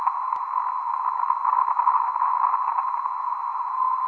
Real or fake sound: real